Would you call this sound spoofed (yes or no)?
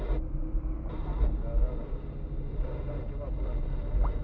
no